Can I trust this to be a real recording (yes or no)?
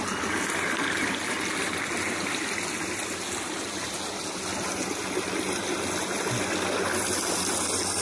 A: yes